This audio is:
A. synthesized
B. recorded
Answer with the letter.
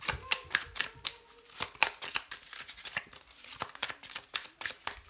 B